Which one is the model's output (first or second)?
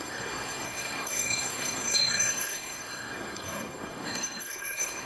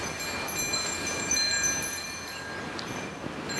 first